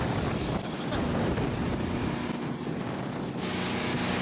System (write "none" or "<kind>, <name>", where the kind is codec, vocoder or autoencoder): none